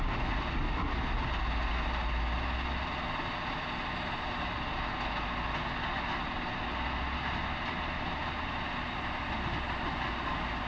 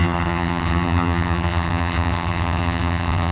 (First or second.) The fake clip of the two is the second